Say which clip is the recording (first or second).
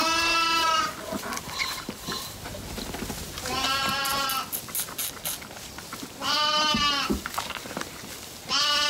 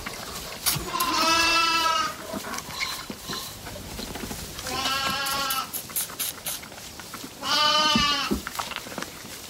first